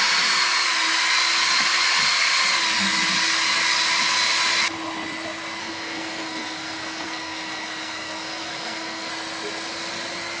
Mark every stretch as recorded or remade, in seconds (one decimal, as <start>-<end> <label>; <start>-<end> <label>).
0.0-5.6 recorded; 5.6-9.1 remade; 9.1-10.4 recorded

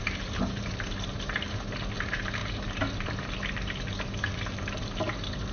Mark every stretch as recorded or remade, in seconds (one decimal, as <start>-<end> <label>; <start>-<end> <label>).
0.0-5.5 remade

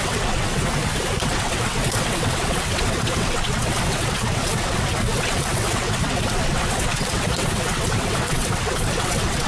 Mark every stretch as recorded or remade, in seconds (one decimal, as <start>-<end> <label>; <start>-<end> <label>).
0.0-0.6 remade; 0.6-1.2 recorded; 1.2-9.5 remade

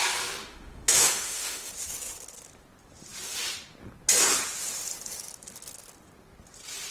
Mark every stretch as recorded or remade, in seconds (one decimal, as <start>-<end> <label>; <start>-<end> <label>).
0.0-0.4 recorded; 0.4-1.7 remade; 1.7-6.9 recorded

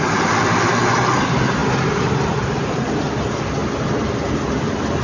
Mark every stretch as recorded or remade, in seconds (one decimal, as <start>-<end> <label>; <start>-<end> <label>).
0.0-1.6 recorded; 1.6-2.8 remade; 2.8-5.0 recorded

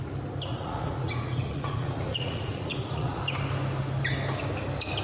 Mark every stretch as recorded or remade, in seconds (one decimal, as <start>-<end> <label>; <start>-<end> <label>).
0.0-0.5 recorded; 0.5-3.2 remade; 3.2-5.0 recorded

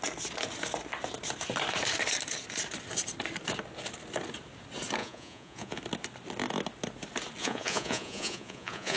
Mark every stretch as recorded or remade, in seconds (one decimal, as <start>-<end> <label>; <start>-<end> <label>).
0.0-5.0 recorded; 5.0-5.8 remade; 5.8-7.4 recorded; 7.4-9.0 remade